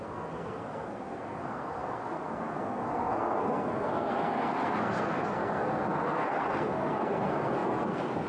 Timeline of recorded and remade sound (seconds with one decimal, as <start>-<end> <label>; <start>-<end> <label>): 0.0-8.3 remade